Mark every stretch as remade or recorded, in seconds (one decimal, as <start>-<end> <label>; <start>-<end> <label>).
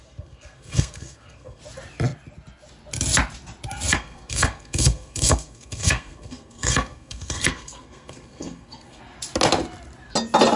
0.0-1.6 remade; 1.6-3.9 recorded; 3.9-9.0 remade; 9.0-10.6 recorded